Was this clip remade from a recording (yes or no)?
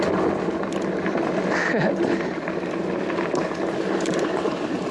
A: no